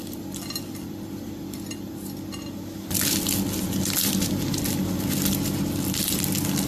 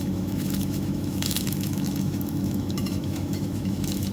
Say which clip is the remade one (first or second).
second